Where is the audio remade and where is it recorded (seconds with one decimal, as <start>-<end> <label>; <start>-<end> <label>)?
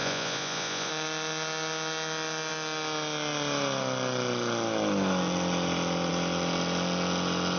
0.0-0.9 remade; 0.9-7.6 recorded